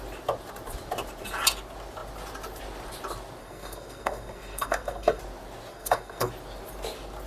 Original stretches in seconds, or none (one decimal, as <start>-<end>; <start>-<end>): 0.0-3.4; 5.2-5.7; 6.3-7.3